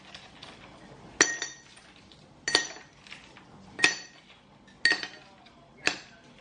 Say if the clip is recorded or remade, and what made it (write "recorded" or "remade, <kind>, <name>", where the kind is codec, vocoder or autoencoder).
recorded